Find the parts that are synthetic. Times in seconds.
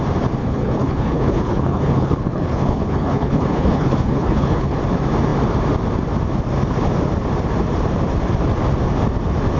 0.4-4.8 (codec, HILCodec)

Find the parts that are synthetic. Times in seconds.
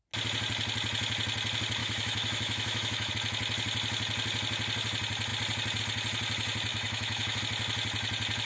1.8-3.1 (autoencoder, DAC-VAE); 6.7-7.4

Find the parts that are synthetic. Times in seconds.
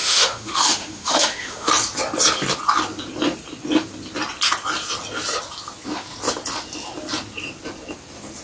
0.0-1.7 (autoencoder, DAC-VAE)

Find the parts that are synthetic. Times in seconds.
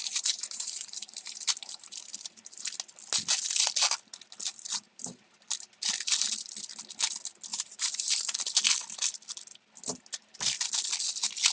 0.0-2.6 (vocoder, BigVGAN v2); 4.5-5.3; 7.5-8.4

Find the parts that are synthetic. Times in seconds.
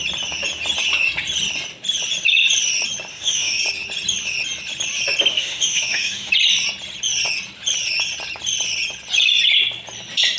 3.1-3.6 (autoencoder, DAC-VAE); 5.3-6.3